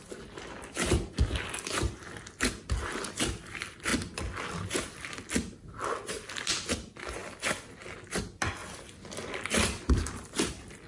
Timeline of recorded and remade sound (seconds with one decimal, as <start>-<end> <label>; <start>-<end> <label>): 0.0-10.9 recorded